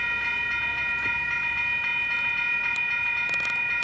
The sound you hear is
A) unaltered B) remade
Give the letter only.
A